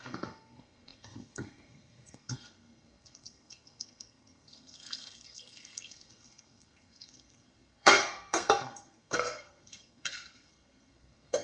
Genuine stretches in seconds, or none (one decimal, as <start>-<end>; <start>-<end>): none